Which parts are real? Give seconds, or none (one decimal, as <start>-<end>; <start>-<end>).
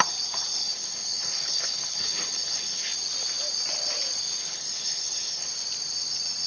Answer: 0.0-0.6; 2.9-4.4; 5.5-6.5